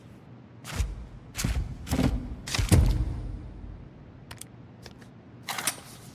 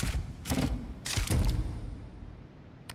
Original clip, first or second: first